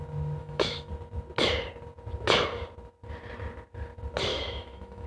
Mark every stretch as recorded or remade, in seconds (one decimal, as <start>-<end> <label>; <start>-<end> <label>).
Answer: 0.0-0.4 recorded; 0.4-0.9 remade; 0.9-4.3 recorded; 4.3-5.1 remade